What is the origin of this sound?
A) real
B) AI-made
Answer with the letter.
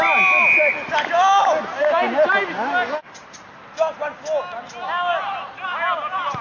A